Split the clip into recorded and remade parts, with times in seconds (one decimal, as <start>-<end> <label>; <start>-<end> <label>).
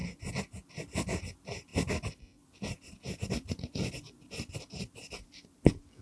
0.0-6.0 recorded